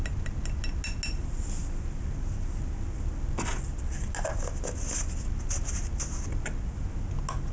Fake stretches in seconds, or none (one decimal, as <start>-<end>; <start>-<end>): none